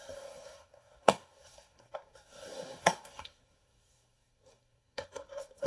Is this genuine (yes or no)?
no